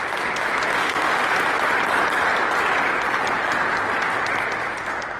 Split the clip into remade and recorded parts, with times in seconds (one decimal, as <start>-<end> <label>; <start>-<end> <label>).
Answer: 0.0-0.7 recorded; 0.7-1.2 remade; 1.2-5.2 recorded

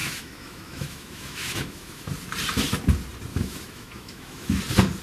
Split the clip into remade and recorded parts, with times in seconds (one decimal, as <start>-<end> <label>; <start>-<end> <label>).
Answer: 0.0-2.1 remade; 2.1-3.3 recorded; 3.3-4.6 remade; 4.6-5.0 recorded

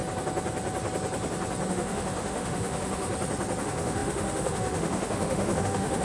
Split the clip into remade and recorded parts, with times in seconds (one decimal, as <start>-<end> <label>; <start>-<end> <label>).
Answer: 0.0-1.7 recorded; 1.7-3.1 remade; 3.1-3.6 recorded; 3.6-6.0 remade

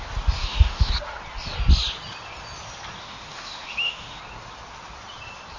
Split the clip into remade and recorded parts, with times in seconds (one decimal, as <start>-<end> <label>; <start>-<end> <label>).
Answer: 0.0-0.4 recorded; 0.4-0.9 remade; 0.9-3.0 recorded; 3.0-4.2 remade; 4.2-5.6 recorded

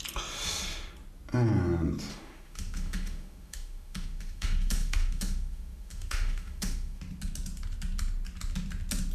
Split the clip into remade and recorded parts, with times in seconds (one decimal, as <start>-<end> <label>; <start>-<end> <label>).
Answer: 0.0-2.1 recorded; 2.1-7.0 remade; 7.0-9.1 recorded

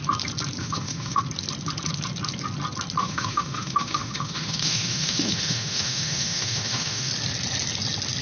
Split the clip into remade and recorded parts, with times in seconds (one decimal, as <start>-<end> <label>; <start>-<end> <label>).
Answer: 0.0-0.6 recorded; 0.6-1.2 remade; 1.2-3.0 recorded; 3.0-7.1 remade; 7.1-8.2 recorded